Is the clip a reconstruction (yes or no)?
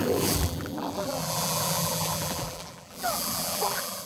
yes